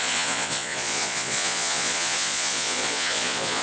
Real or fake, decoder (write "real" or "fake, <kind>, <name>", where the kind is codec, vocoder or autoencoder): fake, vocoder, Vocos